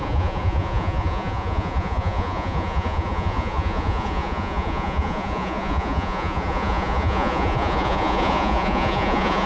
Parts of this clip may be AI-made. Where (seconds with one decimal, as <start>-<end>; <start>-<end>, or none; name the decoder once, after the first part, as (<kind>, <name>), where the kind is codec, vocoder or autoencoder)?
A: 0.0-9.5 (vocoder, Vocos)